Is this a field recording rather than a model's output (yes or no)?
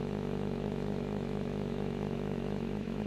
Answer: no